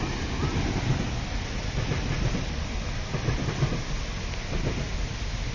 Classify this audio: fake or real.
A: real